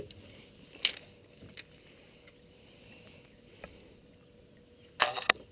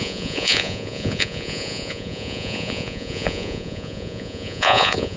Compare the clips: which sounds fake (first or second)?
second